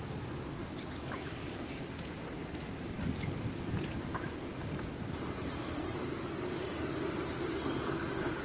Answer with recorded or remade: recorded